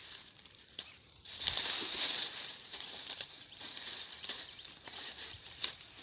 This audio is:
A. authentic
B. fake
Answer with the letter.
B